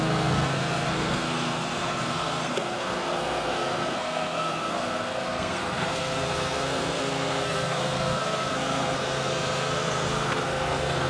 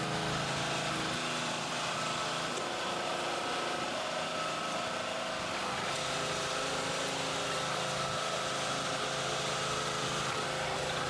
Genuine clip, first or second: second